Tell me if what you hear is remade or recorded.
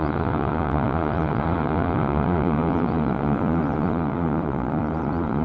remade